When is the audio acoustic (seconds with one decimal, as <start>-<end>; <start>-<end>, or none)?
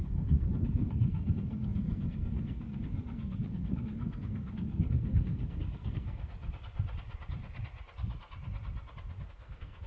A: 6.3-9.3